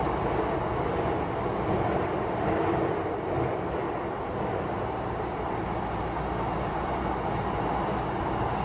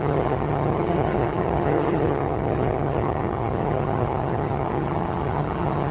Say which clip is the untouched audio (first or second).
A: first